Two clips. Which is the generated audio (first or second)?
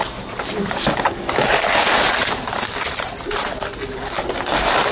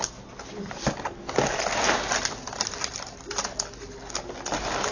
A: first